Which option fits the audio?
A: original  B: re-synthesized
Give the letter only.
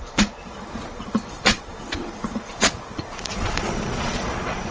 B